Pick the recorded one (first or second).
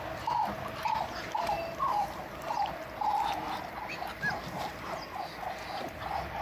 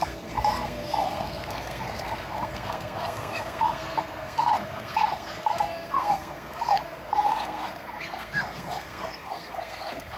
first